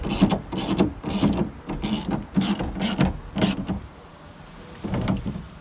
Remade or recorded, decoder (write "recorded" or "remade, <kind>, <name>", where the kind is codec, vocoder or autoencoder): recorded